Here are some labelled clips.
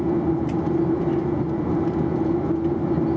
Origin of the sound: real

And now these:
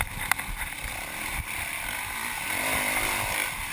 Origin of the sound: real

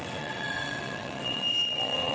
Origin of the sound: fake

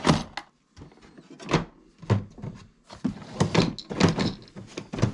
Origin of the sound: real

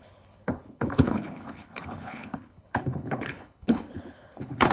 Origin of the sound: fake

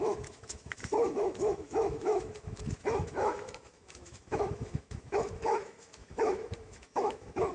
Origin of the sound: fake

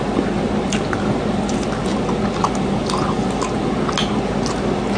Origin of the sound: real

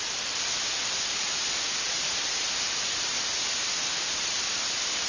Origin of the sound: real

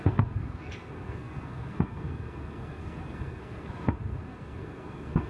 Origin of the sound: fake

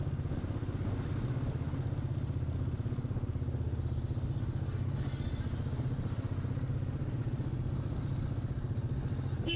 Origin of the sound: real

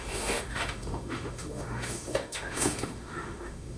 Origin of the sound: fake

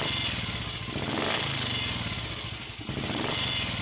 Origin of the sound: real